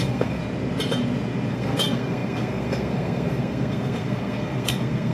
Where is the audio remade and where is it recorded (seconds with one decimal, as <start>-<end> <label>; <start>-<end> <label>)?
0.0-0.4 remade; 0.4-1.5 recorded; 1.5-5.1 remade